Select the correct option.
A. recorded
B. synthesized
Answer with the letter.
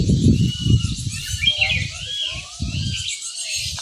B